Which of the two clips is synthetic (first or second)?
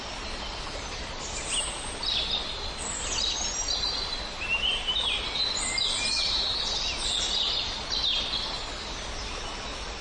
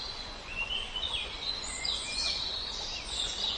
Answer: second